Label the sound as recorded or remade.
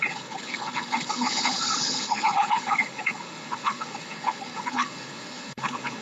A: remade